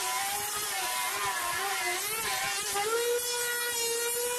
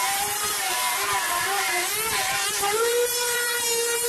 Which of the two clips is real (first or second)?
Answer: first